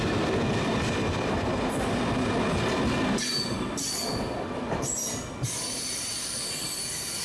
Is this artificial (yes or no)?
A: no